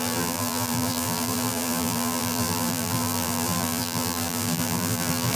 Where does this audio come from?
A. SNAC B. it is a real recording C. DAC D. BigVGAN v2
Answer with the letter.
D